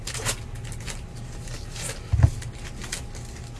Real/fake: real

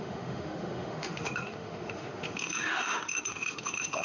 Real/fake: fake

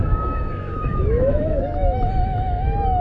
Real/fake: fake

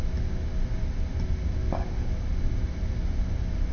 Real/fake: real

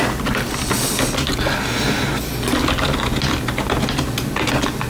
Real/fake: real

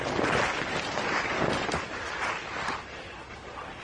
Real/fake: real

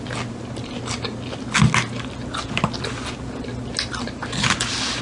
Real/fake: real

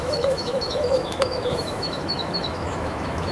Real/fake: fake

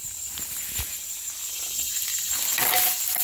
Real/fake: real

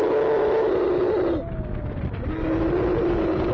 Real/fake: real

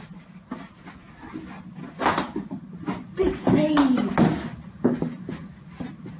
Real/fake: real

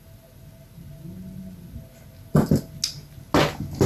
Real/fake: real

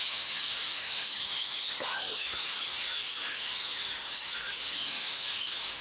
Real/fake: fake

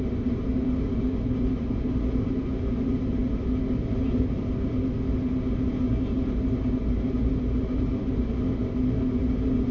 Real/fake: real